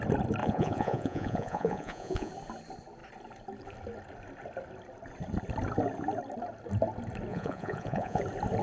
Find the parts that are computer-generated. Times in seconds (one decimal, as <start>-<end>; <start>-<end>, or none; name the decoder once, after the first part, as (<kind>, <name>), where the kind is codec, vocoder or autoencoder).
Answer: 0.4-2.3 (vocoder, Vocos); 7.3-8.2